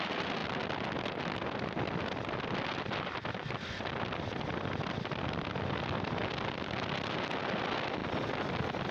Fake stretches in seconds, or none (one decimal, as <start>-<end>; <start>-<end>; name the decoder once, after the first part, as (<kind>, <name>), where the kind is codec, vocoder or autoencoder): none